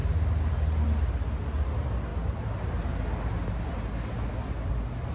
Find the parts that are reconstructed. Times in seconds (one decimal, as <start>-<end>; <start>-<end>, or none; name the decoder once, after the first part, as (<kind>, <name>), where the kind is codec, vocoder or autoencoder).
none